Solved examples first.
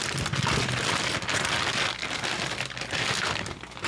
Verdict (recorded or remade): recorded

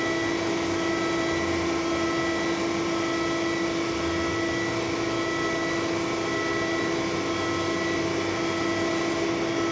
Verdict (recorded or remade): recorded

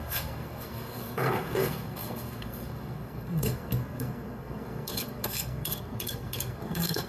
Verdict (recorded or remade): remade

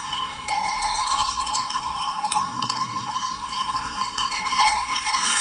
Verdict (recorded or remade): remade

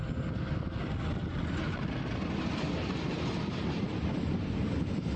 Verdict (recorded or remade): recorded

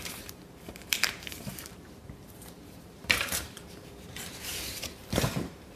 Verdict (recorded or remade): remade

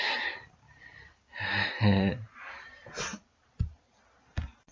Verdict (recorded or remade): recorded